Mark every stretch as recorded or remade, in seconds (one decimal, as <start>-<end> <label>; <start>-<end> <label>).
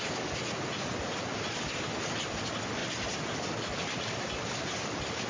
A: 0.0-5.3 recorded